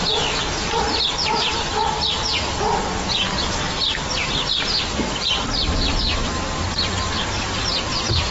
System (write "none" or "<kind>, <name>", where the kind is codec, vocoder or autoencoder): none